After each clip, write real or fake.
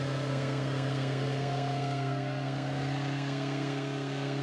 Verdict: fake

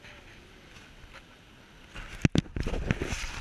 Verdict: real